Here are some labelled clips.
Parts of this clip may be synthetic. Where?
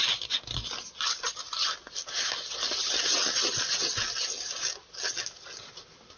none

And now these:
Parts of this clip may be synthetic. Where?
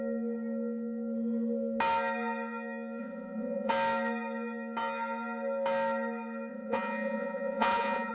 3.0-3.7; 6.5-8.1